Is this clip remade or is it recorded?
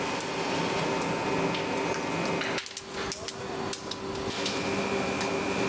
recorded